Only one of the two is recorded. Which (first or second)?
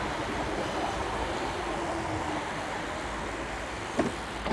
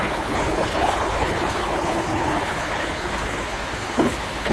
first